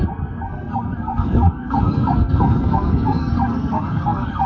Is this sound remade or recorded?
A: remade